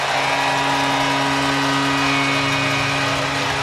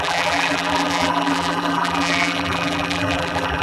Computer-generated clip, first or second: second